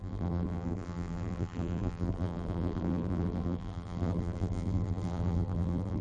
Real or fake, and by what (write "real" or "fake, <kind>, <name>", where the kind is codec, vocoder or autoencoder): fake, vocoder, BigVGAN v2